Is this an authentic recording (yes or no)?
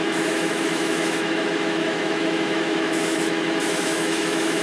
no